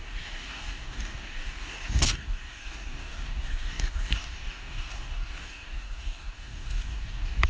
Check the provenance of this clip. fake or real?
fake